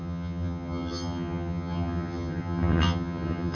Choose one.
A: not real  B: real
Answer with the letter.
A